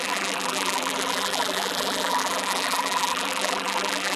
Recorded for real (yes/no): no